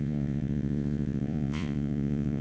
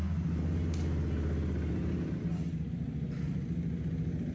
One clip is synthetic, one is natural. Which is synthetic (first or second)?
first